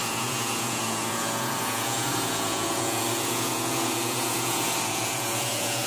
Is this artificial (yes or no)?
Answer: yes